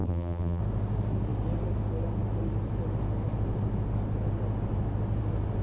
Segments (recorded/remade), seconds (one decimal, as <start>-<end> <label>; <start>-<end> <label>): 0.0-0.6 remade; 0.6-5.6 recorded